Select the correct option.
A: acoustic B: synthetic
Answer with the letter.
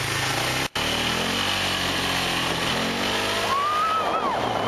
A